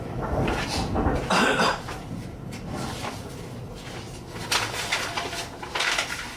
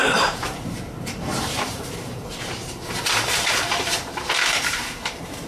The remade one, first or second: second